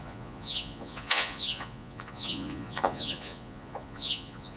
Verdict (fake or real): fake